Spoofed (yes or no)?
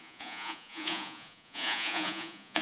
yes